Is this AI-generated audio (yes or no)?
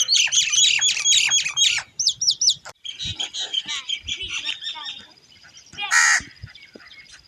yes